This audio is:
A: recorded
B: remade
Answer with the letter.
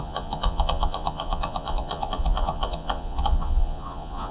B